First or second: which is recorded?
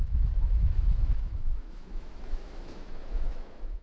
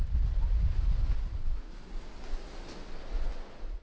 second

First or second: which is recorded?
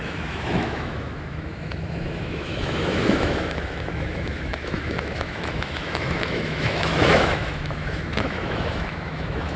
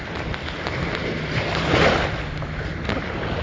second